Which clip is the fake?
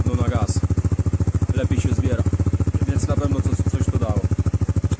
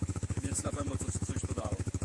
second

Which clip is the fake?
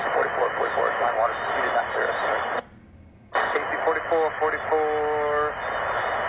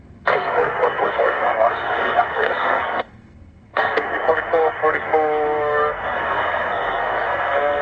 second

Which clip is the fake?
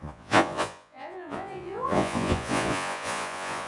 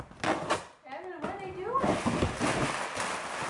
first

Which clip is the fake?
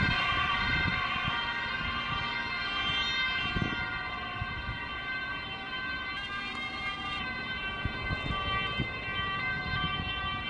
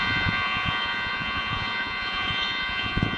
second